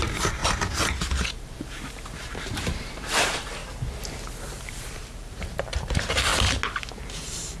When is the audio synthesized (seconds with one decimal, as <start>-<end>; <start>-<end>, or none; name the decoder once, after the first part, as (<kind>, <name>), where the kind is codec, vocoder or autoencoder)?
0.0-0.4 (vocoder, BigVGAN v2); 1.4-3.6; 4.4-6.3; 6.9-7.6

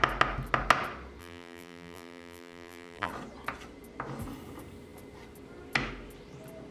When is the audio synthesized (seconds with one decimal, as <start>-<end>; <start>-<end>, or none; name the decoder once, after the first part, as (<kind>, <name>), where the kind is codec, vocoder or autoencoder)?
1.2-3.1 (vocoder, BigVGAN v2)

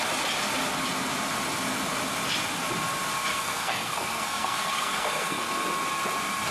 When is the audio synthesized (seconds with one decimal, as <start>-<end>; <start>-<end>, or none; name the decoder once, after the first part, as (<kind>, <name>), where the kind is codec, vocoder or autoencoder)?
3.3-5.5 (codec, SNAC)